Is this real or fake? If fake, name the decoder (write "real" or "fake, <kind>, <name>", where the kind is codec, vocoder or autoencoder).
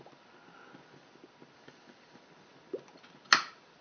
real